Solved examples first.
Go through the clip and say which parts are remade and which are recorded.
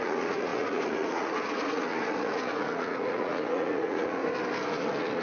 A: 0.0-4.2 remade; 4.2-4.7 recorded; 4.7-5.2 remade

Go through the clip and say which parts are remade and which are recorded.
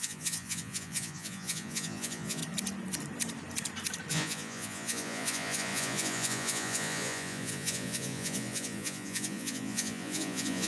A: 0.0-2.4 remade; 2.4-4.1 recorded; 4.1-10.7 remade